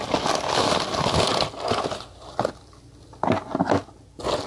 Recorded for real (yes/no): yes